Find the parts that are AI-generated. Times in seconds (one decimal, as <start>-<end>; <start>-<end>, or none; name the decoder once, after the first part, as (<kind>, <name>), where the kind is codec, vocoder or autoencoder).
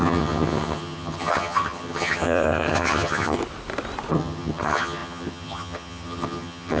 0.0-3.4 (vocoder, HiFi-GAN); 4.1-6.8